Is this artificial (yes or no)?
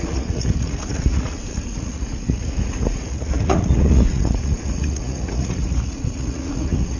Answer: yes